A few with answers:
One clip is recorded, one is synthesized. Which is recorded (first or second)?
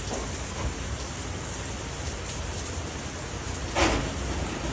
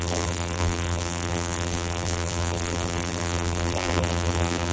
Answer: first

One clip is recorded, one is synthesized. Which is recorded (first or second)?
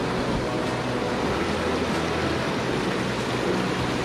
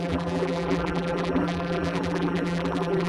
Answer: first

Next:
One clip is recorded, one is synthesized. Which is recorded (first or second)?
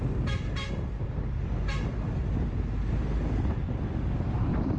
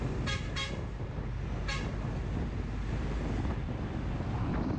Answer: second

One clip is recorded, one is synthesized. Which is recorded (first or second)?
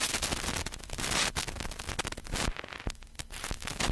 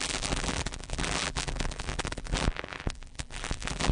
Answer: first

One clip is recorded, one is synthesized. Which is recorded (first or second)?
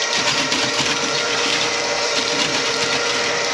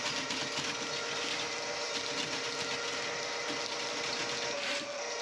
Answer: second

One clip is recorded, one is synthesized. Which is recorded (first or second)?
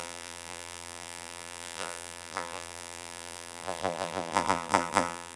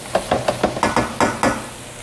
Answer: second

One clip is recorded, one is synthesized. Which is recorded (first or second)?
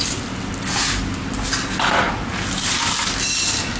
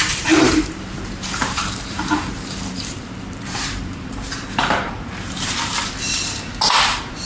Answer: first